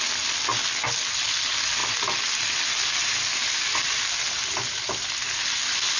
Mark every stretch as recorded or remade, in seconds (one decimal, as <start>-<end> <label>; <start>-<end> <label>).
0.0-6.0 recorded